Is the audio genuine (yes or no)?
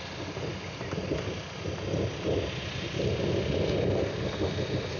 yes